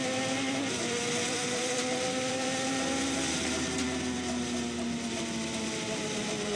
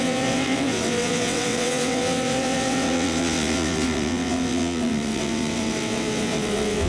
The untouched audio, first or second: first